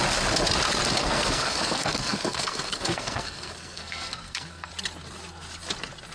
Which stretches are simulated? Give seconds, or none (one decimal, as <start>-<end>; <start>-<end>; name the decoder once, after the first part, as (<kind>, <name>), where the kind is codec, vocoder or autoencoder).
1.0-4.7 (codec, SNAC)